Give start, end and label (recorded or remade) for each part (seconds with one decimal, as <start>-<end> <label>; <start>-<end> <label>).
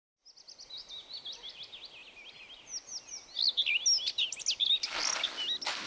0.0-5.9 recorded